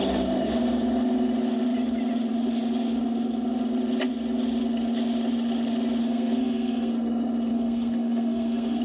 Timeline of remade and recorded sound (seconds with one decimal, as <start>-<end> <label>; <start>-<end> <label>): 0.0-6.0 recorded; 6.0-6.9 remade; 6.9-7.5 recorded; 7.5-8.8 remade